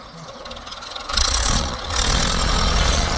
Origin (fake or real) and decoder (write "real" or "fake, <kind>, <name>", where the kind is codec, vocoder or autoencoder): fake, vocoder, Vocos